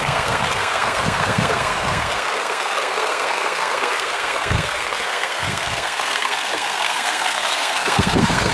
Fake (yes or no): yes